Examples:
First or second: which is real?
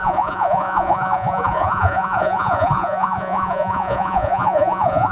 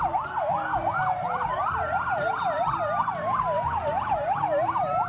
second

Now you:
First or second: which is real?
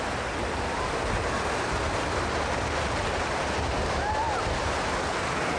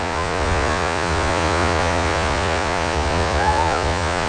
first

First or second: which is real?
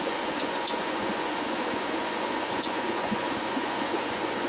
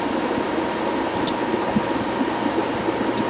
second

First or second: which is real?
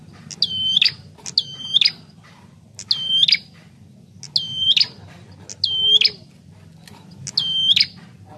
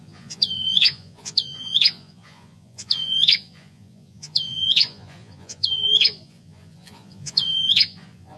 first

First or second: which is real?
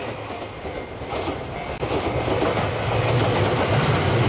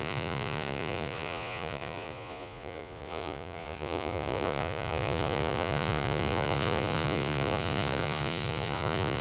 first